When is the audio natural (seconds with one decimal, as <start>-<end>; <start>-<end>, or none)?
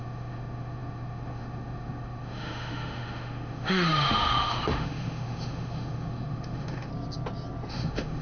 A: 6.9-7.7